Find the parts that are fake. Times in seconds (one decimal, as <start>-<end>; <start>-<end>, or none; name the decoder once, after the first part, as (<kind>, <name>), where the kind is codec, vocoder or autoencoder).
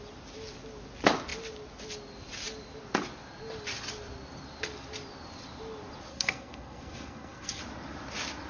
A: 6.1-7.6 (codec, SNAC)